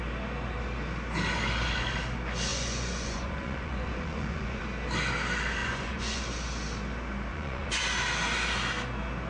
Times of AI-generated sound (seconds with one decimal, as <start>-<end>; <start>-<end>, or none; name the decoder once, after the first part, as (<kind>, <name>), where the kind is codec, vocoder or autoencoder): 2.5-4.6 (vocoder, Vocos); 5.6-6.2; 7.3-7.8